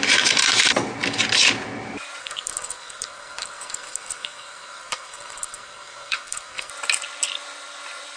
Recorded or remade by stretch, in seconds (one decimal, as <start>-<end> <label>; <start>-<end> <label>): 0.0-2.2 recorded; 2.2-6.7 remade; 6.7-8.2 recorded